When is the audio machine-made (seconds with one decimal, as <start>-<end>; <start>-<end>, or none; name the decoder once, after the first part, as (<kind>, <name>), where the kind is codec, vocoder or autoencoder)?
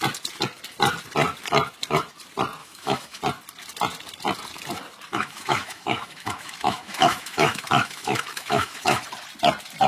2.6-3.2 (autoencoder, DAC-VAE); 5.1-9.0